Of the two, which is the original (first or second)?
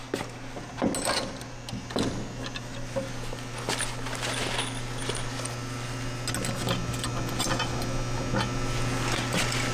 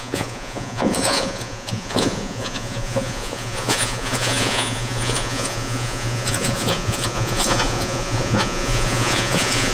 first